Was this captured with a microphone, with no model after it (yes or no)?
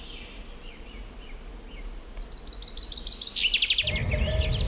yes